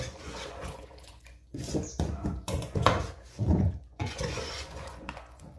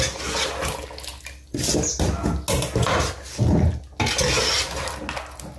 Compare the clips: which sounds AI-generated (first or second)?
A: first